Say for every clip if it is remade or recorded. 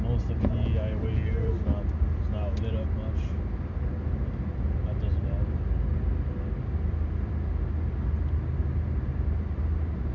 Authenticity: recorded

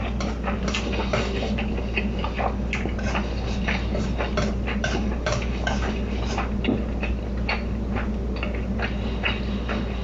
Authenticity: remade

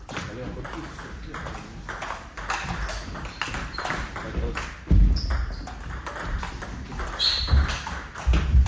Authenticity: recorded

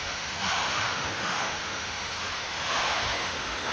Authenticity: remade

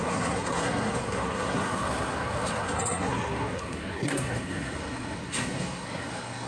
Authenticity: remade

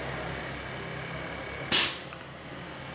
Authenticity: recorded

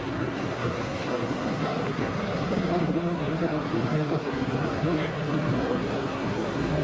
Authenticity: remade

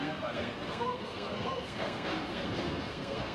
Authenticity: remade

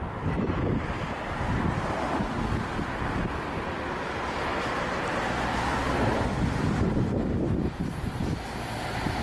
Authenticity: recorded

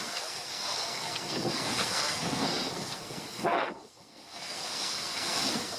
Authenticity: remade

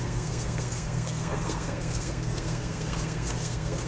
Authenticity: remade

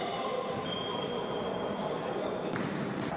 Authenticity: remade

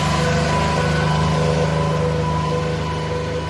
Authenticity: recorded